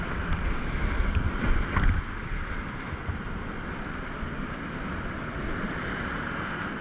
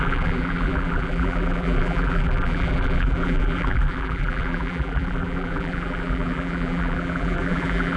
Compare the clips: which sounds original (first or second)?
first